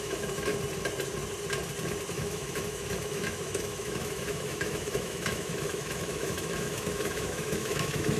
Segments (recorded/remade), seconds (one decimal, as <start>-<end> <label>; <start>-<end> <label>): 0.0-0.5 remade; 0.5-2.1 recorded; 2.1-8.2 remade